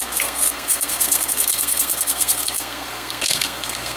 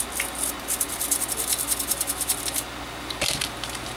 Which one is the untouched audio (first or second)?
second